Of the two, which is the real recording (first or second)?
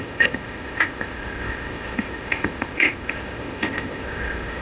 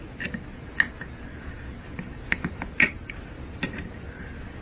second